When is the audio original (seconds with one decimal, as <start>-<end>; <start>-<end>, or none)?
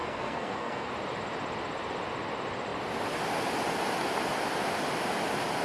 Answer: 0.9-5.6